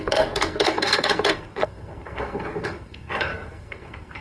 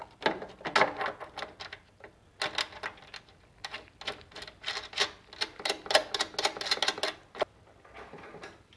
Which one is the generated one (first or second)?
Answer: first